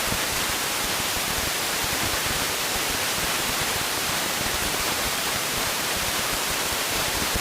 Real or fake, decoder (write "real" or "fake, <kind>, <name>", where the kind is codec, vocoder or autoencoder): fake, vocoder, BigVGAN v2